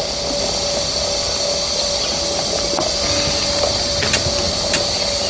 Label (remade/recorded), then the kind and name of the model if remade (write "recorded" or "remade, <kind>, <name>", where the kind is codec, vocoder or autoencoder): recorded